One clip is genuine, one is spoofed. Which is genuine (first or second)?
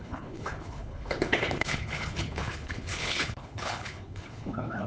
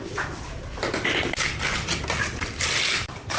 second